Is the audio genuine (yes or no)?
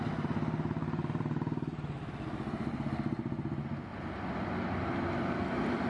yes